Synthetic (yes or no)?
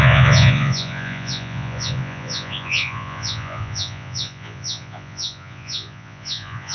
yes